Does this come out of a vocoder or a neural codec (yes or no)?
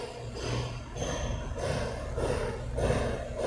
no